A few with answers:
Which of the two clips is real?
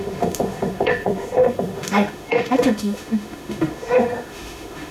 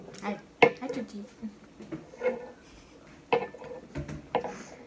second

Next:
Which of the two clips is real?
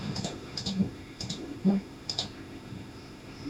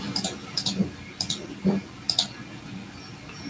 second